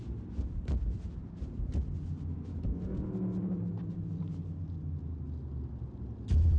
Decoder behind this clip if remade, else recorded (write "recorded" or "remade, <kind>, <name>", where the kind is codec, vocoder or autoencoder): recorded